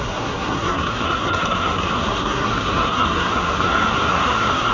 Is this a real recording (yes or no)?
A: no